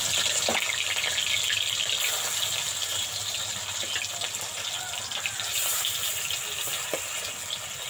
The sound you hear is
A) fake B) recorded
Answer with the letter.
B